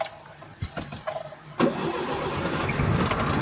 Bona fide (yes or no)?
yes